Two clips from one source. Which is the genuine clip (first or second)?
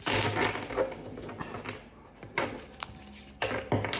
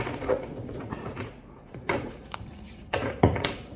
first